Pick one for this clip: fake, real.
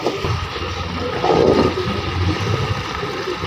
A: real